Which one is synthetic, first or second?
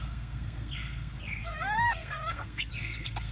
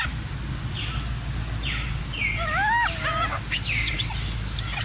first